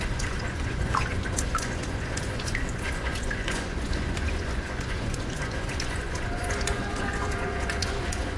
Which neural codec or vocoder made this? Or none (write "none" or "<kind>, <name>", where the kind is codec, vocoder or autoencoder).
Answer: vocoder, Vocos